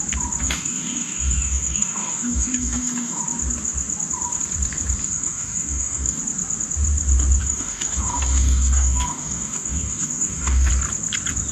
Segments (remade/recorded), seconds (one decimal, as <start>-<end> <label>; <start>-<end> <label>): 0.0-0.4 recorded; 0.4-3.2 remade; 3.2-5.0 recorded; 5.0-6.2 remade; 6.2-7.4 recorded; 7.4-10.7 remade; 10.7-11.5 recorded